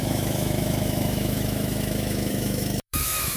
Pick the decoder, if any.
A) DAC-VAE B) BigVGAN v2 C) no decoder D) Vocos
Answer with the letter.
A